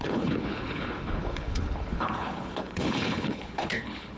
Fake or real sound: fake